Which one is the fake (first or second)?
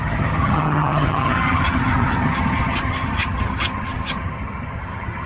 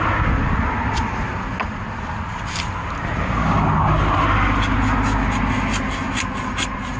first